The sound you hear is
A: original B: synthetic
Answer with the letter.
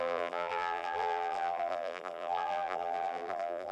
B